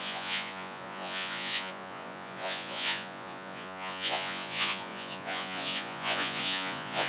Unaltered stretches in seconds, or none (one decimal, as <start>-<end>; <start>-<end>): none